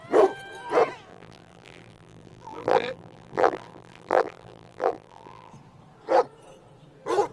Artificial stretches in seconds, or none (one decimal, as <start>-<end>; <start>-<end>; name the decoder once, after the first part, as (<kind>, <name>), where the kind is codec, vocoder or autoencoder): 1.1-5.5 (vocoder, BigVGAN v2)